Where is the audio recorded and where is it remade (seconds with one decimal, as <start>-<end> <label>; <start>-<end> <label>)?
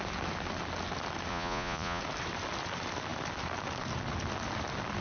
0.0-1.3 recorded; 1.3-2.0 remade; 2.0-5.0 recorded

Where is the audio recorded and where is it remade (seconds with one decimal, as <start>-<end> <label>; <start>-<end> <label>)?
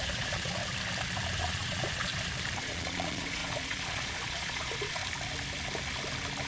0.0-0.6 remade; 0.6-1.4 recorded; 1.4-2.1 remade; 2.1-2.6 recorded; 2.6-5.0 remade; 5.0-6.5 recorded